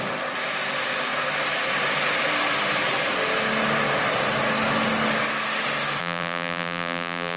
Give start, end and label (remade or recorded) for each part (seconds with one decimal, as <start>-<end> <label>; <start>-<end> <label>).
0.0-6.0 recorded; 6.0-7.4 remade